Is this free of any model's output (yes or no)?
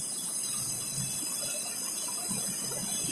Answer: yes